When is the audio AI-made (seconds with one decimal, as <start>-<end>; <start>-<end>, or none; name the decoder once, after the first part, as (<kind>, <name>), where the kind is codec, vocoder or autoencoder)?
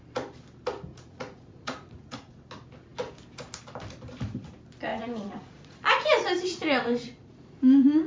0.9-2.4 (vocoder, Vocos); 4.9-5.8; 6.5-8.1